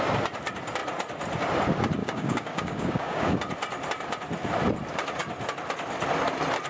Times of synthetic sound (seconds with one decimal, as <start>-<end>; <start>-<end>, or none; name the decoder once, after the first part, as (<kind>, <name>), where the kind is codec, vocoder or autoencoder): 2.0-3.3 (codec, DAC)